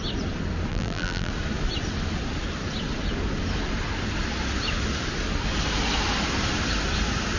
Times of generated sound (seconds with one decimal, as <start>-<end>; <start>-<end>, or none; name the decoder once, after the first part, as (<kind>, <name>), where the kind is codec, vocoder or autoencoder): 0.7-1.3 (vocoder, BigVGAN v2)